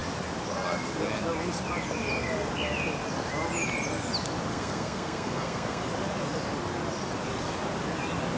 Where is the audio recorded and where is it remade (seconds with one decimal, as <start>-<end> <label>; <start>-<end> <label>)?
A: 0.0-4.5 recorded; 4.5-5.8 remade; 5.8-8.4 recorded